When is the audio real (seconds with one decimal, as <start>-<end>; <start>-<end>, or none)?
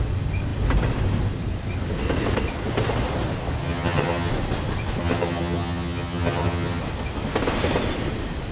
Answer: 0.0-3.6; 4.3-5.0; 6.8-8.5